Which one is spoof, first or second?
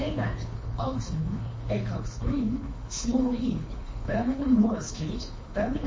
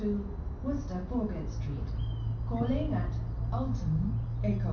first